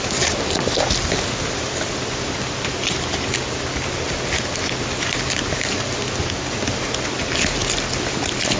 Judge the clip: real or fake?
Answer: real